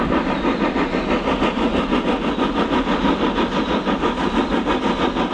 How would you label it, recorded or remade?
recorded